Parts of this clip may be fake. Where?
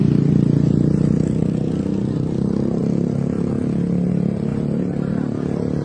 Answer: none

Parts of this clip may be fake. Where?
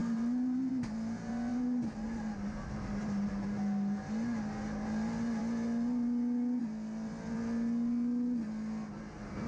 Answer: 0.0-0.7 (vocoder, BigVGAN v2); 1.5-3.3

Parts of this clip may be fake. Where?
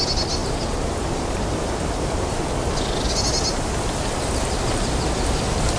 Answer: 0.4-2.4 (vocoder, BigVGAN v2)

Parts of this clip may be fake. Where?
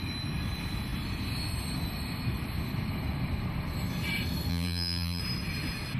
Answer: 4.5-5.2 (vocoder, BigVGAN v2)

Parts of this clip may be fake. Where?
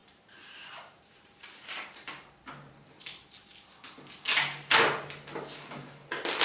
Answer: 0.0-3.8 (vocoder, BigVGAN v2)